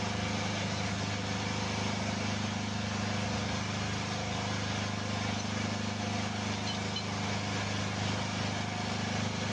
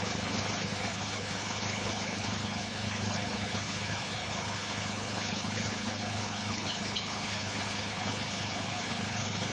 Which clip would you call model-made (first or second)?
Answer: second